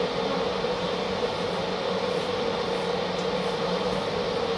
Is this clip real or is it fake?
real